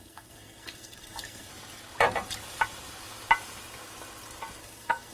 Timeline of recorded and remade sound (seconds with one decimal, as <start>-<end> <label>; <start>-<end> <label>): 0.0-1.5 remade; 1.5-4.6 recorded; 4.6-5.1 remade